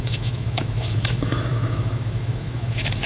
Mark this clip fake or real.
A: fake